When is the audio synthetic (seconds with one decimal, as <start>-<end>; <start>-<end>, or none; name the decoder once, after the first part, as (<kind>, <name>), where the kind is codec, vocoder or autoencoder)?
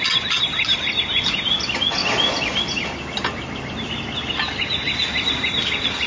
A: none